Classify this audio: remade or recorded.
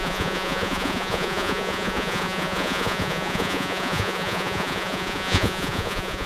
remade